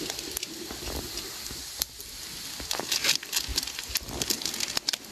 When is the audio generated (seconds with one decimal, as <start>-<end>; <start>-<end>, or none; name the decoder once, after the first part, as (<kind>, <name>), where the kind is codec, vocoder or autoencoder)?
3.5-4.3 (vocoder, BigVGAN v2)